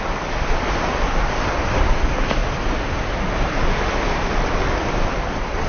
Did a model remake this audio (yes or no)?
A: no